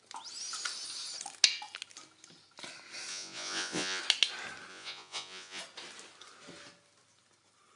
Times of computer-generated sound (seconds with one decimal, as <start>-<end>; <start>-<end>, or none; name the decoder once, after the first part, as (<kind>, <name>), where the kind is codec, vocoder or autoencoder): 3.1-4.0 (vocoder, Vocos); 4.7-5.6